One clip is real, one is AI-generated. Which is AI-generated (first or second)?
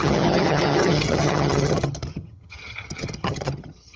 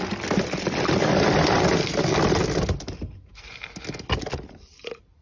first